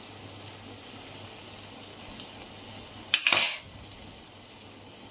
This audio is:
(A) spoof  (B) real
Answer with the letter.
B